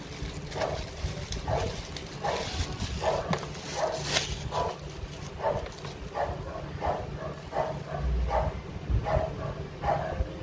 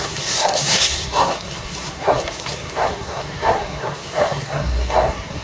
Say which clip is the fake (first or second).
second